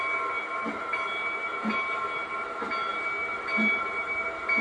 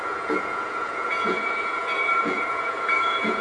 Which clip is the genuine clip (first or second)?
first